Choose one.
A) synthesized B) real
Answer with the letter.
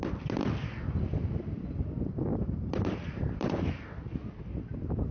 B